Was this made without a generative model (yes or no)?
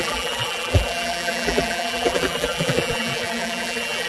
no